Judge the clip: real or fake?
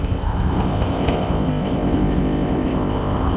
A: fake